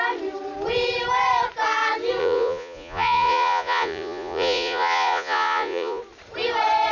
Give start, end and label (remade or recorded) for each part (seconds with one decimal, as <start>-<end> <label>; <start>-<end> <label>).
0.0-2.2 recorded; 2.2-6.0 remade; 6.0-6.9 recorded